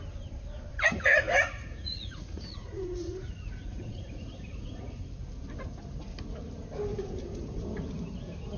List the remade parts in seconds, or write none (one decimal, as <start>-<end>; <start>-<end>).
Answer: 0.7-5.0; 6.9-7.6